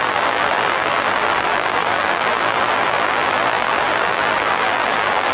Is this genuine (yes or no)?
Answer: no